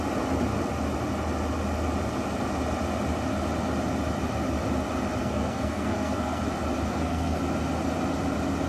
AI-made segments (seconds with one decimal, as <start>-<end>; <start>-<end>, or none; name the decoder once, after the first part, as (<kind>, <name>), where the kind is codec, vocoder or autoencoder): 5.2-6.4 (codec, SNAC); 6.9-7.4